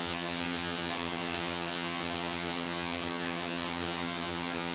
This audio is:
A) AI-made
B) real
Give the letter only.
A